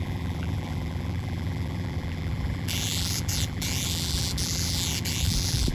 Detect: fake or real fake